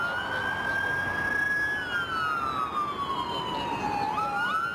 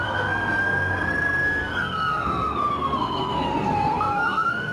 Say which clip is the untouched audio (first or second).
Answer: first